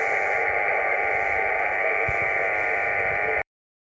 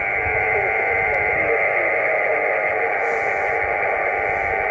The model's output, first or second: first